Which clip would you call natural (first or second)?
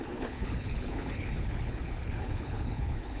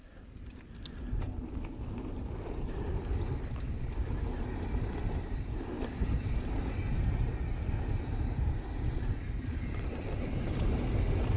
second